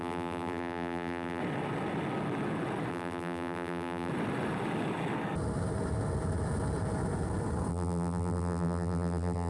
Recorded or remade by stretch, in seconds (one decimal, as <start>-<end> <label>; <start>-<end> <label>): 0.0-1.4 remade; 1.4-2.9 recorded; 2.9-4.1 remade; 4.1-7.7 recorded; 7.7-9.5 remade